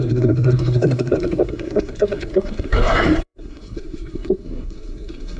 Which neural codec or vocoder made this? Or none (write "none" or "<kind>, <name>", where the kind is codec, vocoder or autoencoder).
codec, SNAC